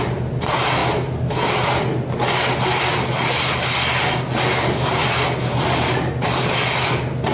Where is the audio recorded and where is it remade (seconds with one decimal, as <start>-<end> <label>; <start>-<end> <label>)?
0.0-7.3 recorded